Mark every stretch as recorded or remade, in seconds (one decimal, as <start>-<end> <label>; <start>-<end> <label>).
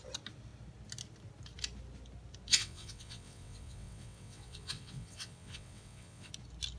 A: 0.0-2.5 recorded; 2.5-6.3 remade; 6.3-6.8 recorded